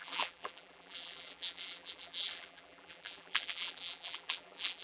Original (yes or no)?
no